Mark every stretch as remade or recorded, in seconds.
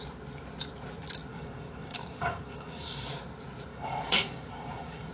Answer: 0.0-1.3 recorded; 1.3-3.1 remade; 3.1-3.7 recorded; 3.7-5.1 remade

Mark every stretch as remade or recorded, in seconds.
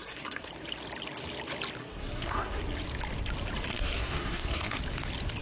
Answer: 0.0-0.5 remade; 0.5-1.8 recorded; 1.8-2.6 remade; 2.6-3.7 recorded; 3.7-4.8 remade; 4.8-5.4 recorded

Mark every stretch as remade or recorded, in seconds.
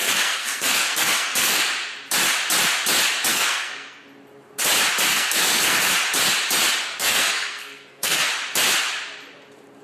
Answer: 0.0-1.6 remade; 1.6-3.3 recorded; 3.3-4.0 remade; 4.0-5.1 recorded; 5.1-5.9 remade; 5.9-6.8 recorded; 6.8-8.3 remade; 8.3-9.8 recorded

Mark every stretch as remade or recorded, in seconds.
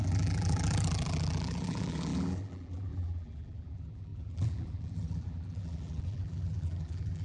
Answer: 0.0-7.2 remade